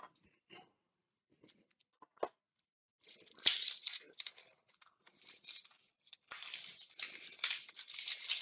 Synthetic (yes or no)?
yes